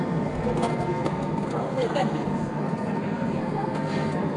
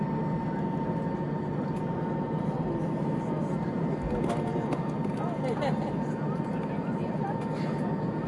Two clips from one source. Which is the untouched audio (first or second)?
second